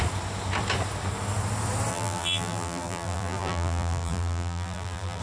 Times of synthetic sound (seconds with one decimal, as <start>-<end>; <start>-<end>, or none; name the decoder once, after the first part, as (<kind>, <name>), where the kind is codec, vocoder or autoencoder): 1.9-5.2 (vocoder, BigVGAN v2)